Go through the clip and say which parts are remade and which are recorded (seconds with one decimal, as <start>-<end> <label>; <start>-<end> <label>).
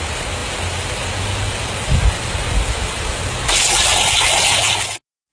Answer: 0.0-5.3 recorded